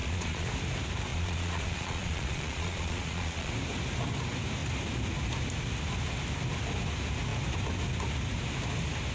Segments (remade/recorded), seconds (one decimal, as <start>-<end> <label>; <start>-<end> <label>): 0.0-0.5 remade; 0.5-1.1 recorded; 1.1-3.5 remade; 3.5-9.1 recorded